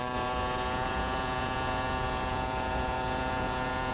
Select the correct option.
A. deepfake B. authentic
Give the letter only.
A